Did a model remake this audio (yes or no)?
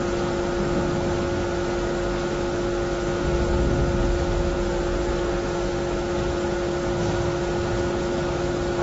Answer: no